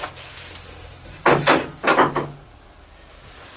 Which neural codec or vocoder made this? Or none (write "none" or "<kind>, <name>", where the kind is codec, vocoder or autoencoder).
none